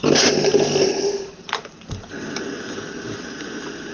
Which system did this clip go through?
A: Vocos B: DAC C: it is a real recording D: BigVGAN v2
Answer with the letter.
C